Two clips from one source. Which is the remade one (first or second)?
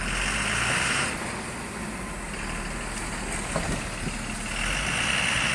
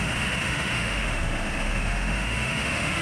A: second